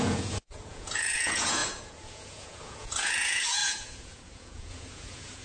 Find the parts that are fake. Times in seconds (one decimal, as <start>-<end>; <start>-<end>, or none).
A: 0.0-5.4